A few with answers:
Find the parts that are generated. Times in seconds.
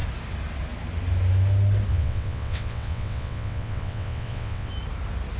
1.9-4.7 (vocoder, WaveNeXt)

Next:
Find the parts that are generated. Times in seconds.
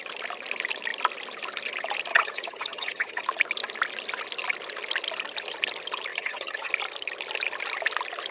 2.1-3.2 (vocoder, HiFi-GAN); 6.1-6.7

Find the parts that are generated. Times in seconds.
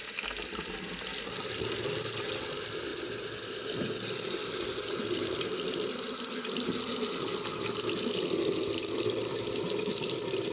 none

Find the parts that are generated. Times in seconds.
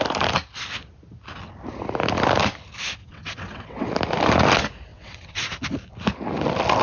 3.0-3.9 (vocoder, WaveNeXt); 4.9-5.4